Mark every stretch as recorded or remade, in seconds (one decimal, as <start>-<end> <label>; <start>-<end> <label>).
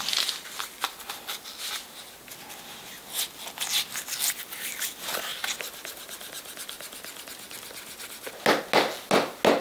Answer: 0.0-9.6 recorded